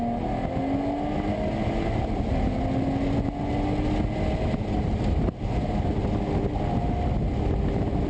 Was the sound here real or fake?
real